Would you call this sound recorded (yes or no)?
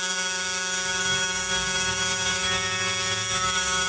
no